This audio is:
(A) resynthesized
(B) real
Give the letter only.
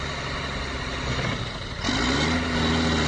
B